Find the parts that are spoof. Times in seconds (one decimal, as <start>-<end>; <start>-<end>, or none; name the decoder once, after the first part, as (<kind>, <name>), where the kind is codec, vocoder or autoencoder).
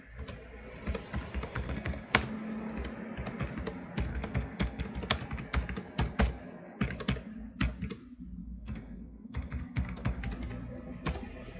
1.3-2.1 (codec, SNAC); 4.1-4.8; 8.4-10.2